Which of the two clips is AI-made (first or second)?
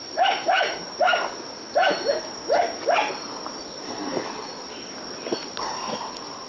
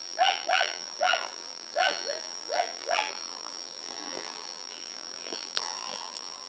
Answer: second